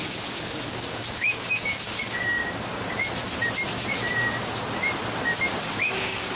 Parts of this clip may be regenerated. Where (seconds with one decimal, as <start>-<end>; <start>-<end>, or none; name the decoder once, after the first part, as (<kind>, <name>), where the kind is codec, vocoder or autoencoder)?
0.0-2.4 (codec, DAC); 5.7-6.4